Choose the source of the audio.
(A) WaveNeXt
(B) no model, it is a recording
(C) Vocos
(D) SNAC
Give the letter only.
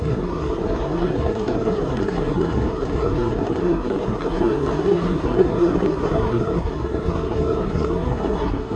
D